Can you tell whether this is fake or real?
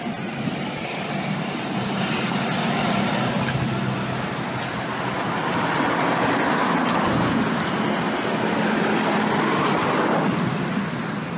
real